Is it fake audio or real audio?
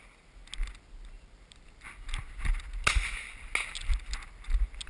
real